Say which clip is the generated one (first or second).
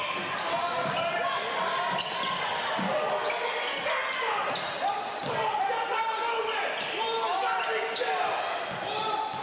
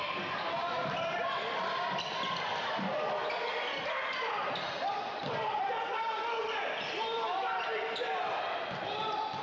second